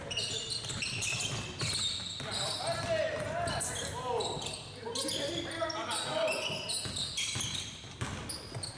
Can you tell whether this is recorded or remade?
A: recorded